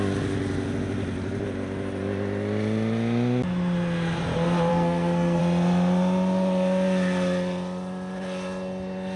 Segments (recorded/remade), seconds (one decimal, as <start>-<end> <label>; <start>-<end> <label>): 0.0-4.7 recorded; 4.7-5.4 remade; 5.4-9.2 recorded